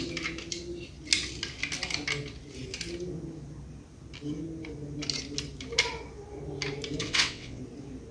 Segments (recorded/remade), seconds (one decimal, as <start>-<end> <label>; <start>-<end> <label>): 0.0-7.0 recorded; 7.0-7.6 remade; 7.6-8.1 recorded